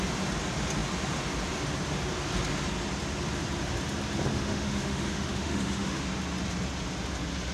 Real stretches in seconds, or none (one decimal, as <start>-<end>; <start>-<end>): 0.0-4.3; 6.0-7.5